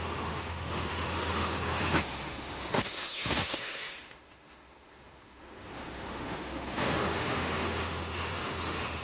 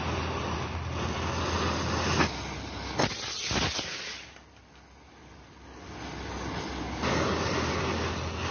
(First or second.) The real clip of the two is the second